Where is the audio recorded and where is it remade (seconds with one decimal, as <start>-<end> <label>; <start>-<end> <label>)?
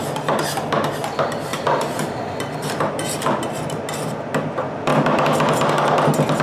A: 0.0-1.5 recorded; 1.5-3.8 remade; 3.8-6.4 recorded